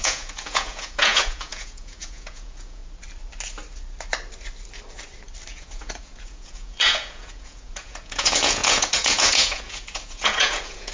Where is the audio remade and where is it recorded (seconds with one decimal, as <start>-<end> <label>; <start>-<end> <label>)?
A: 0.0-2.8 remade; 2.8-5.5 recorded; 5.5-10.9 remade